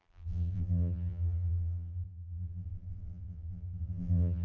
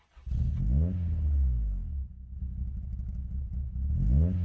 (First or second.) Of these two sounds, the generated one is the first